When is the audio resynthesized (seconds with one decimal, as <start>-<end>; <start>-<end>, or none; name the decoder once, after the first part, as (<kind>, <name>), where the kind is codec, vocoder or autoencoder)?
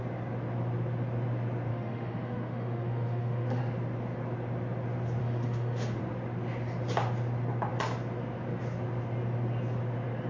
1.7-3.6 (autoencoder, DAC-VAE); 5.2-6.0